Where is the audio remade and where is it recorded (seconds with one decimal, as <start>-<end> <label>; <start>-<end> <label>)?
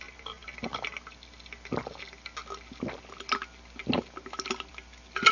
0.0-5.3 recorded